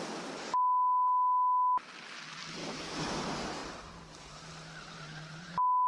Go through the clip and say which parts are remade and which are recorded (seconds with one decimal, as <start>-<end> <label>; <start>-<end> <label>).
0.0-2.6 recorded; 2.6-3.2 remade; 3.2-5.9 recorded